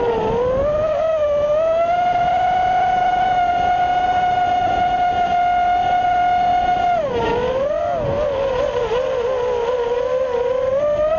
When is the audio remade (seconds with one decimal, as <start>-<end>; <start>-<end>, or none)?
none